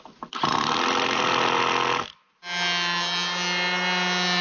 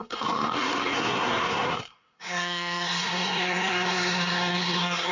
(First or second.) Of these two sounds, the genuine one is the first